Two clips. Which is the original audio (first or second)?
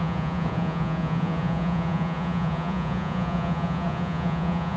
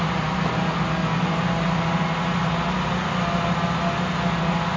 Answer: second